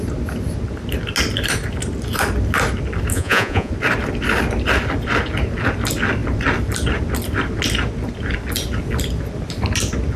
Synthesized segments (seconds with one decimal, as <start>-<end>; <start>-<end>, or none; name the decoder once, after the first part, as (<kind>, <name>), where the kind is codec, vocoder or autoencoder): 3.1-3.7 (vocoder, Vocos)